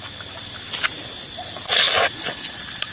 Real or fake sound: real